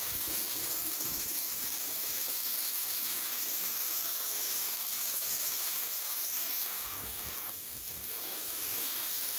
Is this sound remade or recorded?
remade